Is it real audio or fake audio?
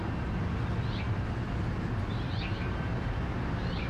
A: real